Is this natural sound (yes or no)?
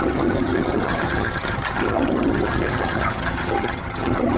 no